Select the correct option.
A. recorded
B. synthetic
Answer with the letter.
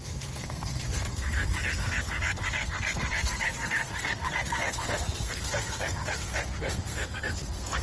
B